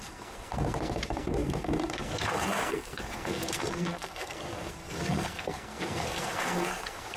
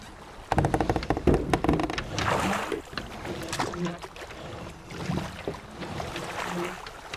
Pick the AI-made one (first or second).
first